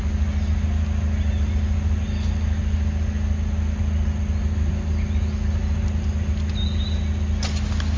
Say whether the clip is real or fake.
real